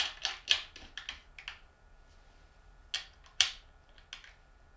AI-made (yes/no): no